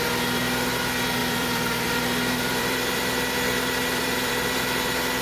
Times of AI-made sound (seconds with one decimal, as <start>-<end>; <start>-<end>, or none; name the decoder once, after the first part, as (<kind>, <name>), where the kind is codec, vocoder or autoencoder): 1.2-4.3 (vocoder, BigVGAN v2)